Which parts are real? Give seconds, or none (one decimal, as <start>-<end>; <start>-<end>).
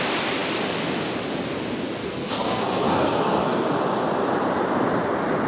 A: 0.0-2.0; 3.8-5.5